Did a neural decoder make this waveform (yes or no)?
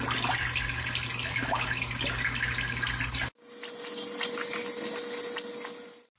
no